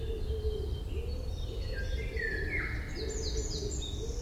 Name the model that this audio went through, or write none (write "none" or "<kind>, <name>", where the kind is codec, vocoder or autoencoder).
none